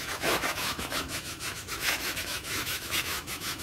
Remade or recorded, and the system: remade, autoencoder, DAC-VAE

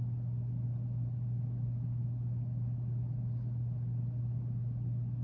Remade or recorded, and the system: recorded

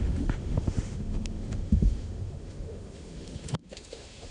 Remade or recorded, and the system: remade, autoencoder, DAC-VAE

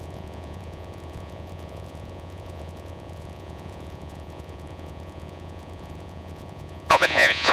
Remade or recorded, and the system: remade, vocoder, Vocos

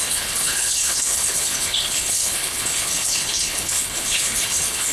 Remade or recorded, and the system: remade, codec, HILCodec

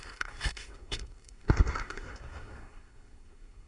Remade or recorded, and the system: remade, codec, SNAC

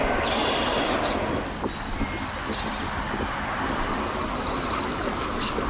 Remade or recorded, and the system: recorded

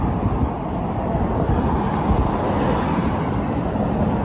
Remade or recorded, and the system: recorded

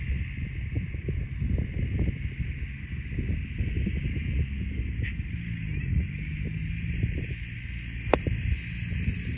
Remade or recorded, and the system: recorded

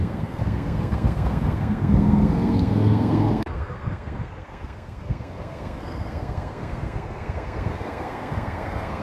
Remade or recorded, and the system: remade, codec, SNAC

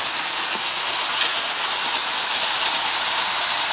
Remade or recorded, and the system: recorded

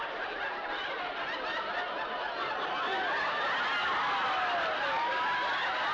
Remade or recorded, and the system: recorded